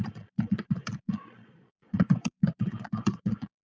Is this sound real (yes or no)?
no